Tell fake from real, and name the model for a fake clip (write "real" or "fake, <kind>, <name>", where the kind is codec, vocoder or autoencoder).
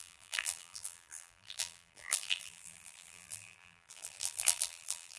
fake, vocoder, BigVGAN v2